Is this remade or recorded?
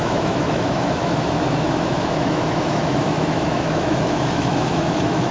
remade